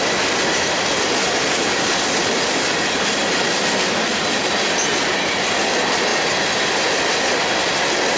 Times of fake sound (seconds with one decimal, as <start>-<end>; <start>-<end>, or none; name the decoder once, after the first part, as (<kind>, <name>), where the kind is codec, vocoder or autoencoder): none